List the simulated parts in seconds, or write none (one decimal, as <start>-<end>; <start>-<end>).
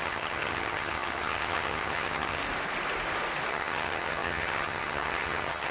0.0-2.4; 3.5-5.7